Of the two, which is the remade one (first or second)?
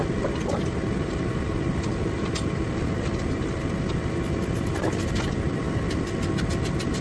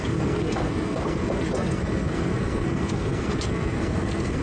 second